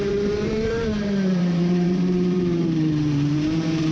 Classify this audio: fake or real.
fake